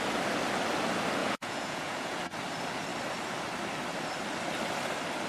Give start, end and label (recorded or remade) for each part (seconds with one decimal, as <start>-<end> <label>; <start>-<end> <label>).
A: 0.0-1.2 recorded; 1.2-2.2 remade; 2.2-5.3 recorded